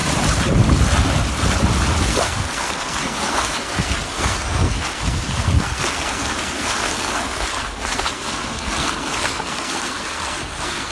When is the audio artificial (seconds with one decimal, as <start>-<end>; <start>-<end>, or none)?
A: 2.0-10.9